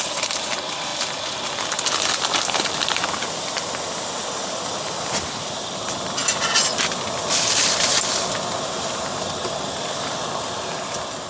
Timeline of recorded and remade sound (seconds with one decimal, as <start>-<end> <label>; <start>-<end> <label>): 0.0-11.3 recorded